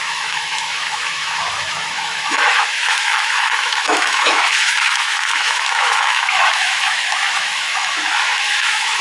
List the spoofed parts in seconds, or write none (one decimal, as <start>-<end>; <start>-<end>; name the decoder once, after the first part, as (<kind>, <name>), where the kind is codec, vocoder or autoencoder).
0.0-9.0 (autoencoder, DAC-VAE)